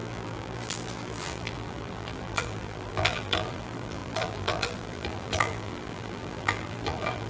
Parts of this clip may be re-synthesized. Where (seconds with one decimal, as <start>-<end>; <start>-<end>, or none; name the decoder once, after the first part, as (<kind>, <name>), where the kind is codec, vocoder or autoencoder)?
0.0-7.3 (vocoder, BigVGAN v2)